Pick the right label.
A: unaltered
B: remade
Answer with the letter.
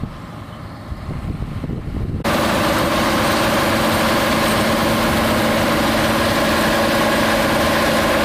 A